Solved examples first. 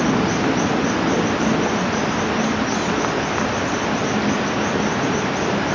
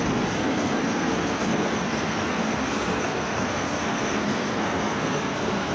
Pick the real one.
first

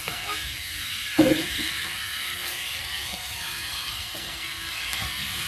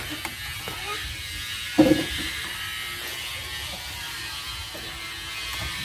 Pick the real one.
second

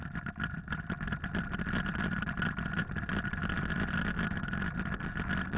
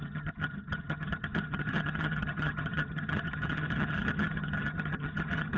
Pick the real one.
first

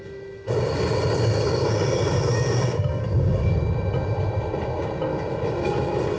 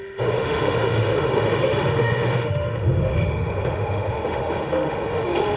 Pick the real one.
first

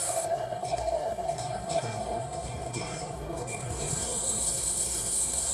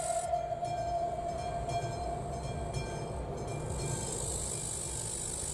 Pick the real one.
second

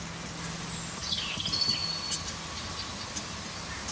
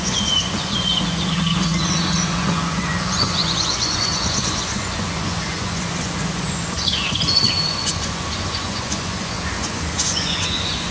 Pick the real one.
first